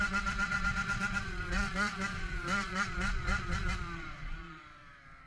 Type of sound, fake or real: fake